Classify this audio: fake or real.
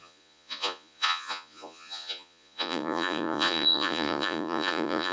fake